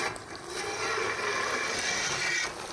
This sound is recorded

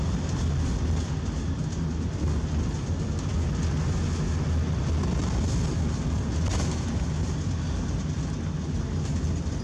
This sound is recorded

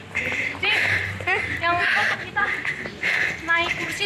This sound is remade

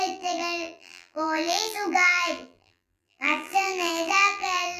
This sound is remade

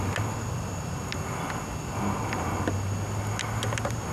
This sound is recorded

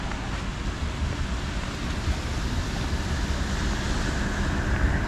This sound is recorded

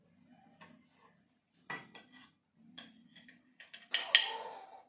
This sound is recorded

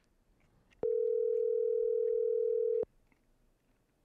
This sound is recorded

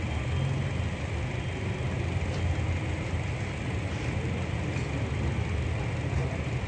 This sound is recorded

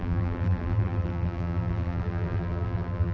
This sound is remade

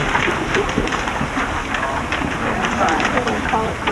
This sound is remade